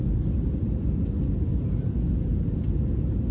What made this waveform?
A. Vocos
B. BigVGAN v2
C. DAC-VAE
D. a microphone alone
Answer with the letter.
D